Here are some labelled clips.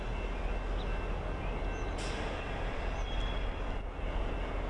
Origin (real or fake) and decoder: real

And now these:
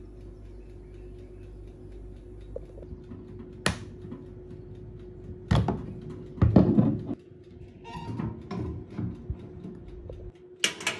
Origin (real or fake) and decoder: real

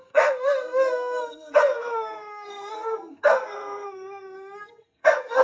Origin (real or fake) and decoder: fake, codec, SNAC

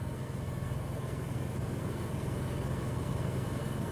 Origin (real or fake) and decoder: fake, codec, SNAC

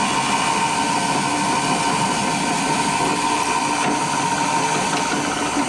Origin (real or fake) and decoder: real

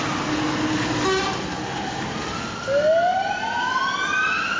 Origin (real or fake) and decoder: real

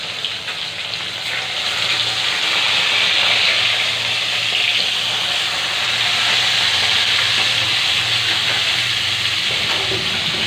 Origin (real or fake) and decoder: real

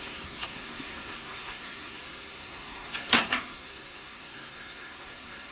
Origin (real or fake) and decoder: fake, codec, SNAC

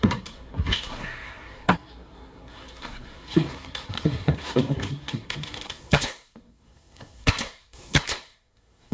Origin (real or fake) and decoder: fake, codec, SNAC